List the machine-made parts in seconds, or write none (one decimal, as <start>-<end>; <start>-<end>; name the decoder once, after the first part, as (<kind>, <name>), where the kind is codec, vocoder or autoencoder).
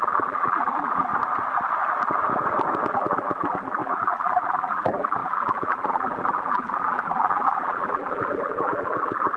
0.0-1.1 (vocoder, BigVGAN v2); 2.9-9.4